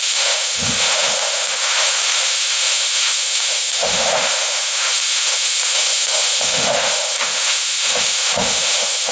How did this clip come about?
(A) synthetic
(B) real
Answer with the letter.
A